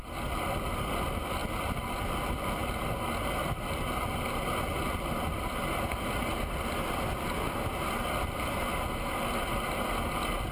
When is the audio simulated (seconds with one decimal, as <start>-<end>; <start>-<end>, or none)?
none